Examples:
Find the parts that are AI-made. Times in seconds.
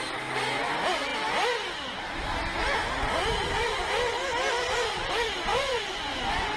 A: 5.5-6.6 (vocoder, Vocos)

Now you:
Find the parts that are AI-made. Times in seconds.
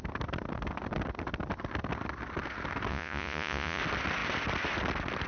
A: 2.9-3.8 (vocoder, Vocos)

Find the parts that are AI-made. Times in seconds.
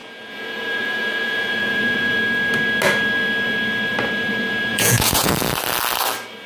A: 0.0-2.2 (vocoder, Vocos); 4.7-5.3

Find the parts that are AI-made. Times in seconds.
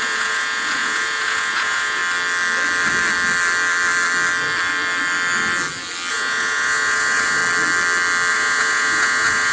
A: 0.0-2.0 (vocoder, Vocos); 6.1-7.4; 8.3-9.5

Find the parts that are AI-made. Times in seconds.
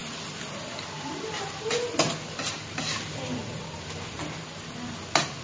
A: none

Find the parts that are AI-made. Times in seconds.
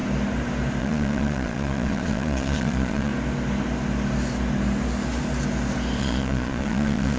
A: 0.8-3.1 (vocoder, Vocos); 6.0-7.2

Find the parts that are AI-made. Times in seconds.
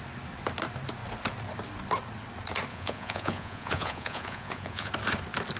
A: 2.7-4.9 (vocoder, Vocos)